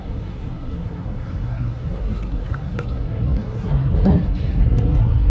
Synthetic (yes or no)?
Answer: yes